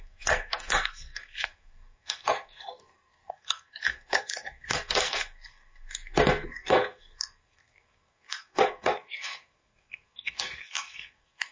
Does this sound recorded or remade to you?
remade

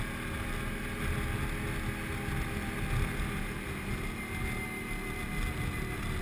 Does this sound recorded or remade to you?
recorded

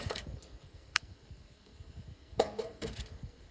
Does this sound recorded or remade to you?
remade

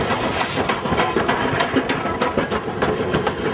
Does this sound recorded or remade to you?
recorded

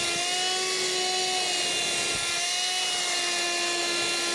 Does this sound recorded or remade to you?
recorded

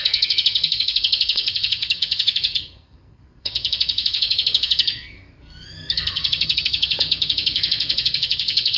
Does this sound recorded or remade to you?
remade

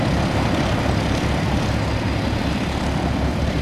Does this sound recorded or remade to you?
recorded